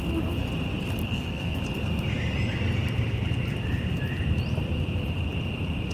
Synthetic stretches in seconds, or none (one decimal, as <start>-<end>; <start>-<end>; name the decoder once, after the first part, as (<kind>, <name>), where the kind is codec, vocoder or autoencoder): 1.0-1.6 (codec, SNAC)